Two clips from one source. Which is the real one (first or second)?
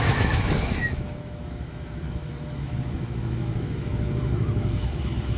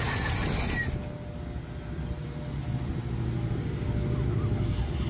second